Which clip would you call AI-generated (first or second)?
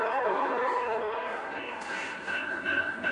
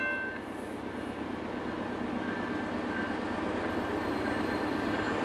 first